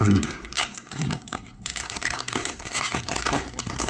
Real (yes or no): no